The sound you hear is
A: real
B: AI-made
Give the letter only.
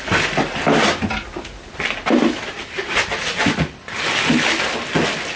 A